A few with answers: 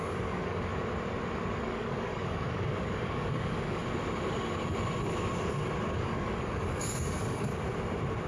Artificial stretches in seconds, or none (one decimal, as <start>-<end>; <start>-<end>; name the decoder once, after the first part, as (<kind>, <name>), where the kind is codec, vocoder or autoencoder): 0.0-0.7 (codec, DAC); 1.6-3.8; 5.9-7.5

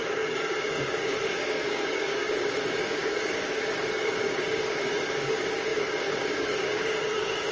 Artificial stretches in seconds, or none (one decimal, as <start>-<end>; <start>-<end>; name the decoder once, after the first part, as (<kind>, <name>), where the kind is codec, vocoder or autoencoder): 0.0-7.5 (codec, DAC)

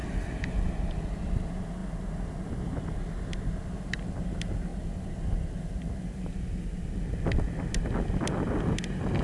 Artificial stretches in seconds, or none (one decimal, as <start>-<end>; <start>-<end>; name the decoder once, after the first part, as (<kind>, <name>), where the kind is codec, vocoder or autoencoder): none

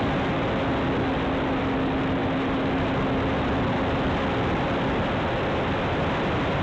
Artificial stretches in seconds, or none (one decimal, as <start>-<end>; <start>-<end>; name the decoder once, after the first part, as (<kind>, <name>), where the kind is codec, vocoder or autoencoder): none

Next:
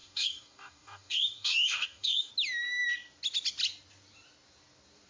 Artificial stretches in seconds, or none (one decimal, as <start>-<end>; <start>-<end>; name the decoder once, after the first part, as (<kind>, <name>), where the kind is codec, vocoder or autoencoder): 0.0-2.3 (codec, DAC)

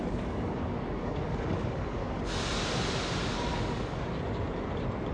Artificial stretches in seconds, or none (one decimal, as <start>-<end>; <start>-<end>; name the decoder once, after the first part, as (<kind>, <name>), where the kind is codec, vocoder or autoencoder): 0.0-2.2 (codec, DAC); 3.3-4.0

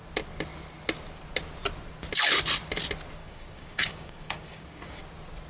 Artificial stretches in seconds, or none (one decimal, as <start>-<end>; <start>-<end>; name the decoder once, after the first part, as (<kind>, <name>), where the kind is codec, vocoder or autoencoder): 3.2-5.0 (codec, DAC)